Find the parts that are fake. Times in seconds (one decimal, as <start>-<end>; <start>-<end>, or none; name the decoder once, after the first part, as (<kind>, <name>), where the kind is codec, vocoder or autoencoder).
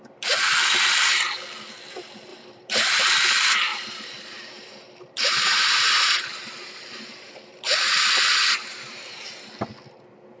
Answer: 2.3-2.9 (vocoder, BigVGAN v2); 3.7-7.9; 8.4-9.5